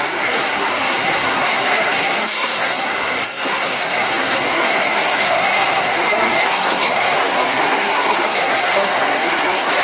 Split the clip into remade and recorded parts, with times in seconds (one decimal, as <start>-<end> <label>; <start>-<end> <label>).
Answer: 0.0-9.8 remade